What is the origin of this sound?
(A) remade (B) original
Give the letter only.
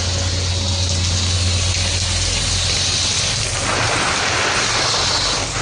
B